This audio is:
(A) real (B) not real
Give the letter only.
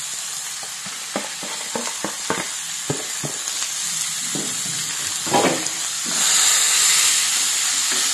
A